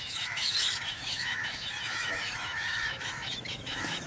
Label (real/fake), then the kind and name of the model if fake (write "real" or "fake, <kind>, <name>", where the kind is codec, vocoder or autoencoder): fake, autoencoder, DAC-VAE